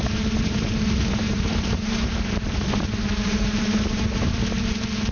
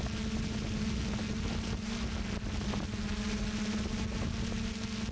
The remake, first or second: first